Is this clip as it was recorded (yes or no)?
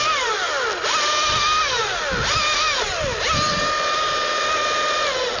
yes